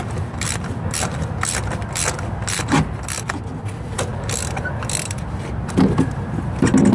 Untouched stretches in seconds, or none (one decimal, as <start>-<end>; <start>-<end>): 0.0-6.9